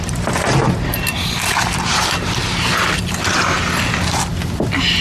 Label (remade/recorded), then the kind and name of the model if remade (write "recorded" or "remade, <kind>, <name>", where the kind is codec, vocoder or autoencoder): recorded